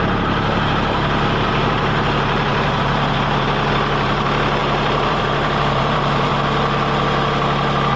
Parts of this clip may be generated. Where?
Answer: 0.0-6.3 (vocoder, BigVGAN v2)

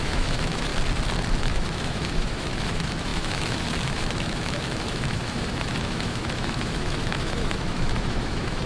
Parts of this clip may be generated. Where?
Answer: 0.0-0.7 (autoencoder, DAC-VAE); 1.4-8.7

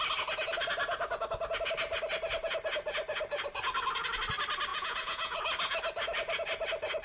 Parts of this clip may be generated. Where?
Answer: 4.7-5.4 (vocoder, Vocos)

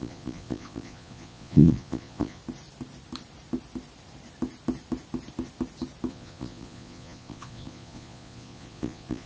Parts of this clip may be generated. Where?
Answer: 0.0-2.4 (vocoder, Vocos); 6.1-9.3

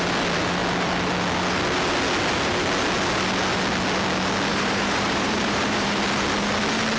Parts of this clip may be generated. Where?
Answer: 4.5-6.0 (vocoder, BigVGAN v2)

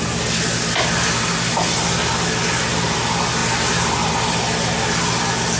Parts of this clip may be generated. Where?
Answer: none

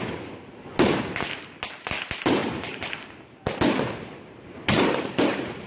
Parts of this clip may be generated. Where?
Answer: none

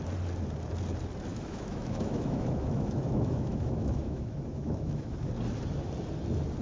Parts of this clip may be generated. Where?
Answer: 1.3-5.3 (autoencoder, DAC-VAE)